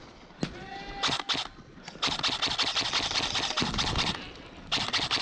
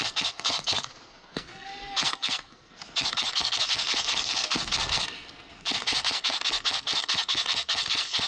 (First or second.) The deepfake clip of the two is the second